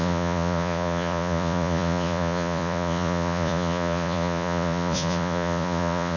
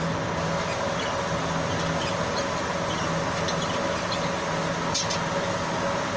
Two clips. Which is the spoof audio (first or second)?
first